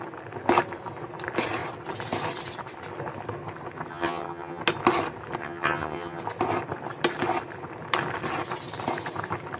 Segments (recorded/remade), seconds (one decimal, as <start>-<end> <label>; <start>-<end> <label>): 0.0-3.9 recorded; 3.9-4.6 remade; 4.6-5.4 recorded; 5.4-6.2 remade; 6.2-9.6 recorded